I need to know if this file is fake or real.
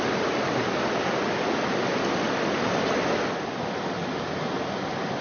real